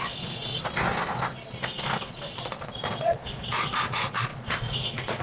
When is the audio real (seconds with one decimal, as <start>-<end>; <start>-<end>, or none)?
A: 0.5-2.1